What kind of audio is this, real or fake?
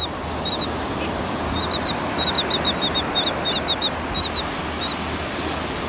real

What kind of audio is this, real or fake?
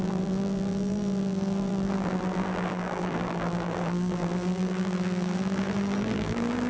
fake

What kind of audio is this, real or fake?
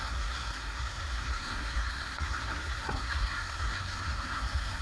fake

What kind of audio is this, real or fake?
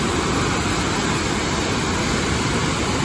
real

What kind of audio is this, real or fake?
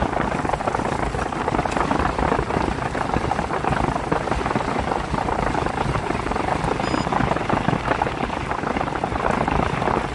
real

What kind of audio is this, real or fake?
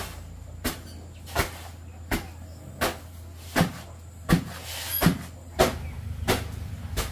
real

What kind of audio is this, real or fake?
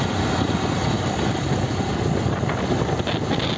real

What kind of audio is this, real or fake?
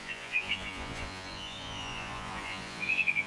fake